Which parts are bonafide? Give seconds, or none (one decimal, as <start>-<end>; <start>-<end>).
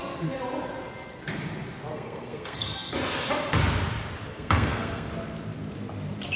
0.0-1.9; 2.9-4.3; 5.1-6.4